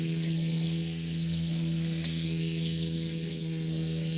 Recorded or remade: remade